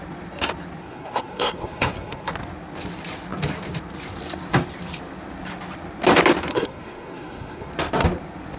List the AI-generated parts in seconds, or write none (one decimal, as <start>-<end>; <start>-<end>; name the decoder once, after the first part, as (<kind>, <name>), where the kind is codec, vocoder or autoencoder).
0.8-2.3 (codec, SNAC); 6.5-7.7